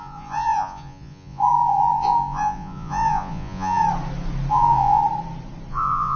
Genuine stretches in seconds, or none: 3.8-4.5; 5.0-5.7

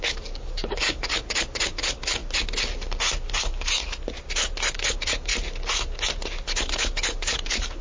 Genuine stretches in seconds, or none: 1.1-1.7; 2.2-3.4; 3.8-4.7; 5.3-6.6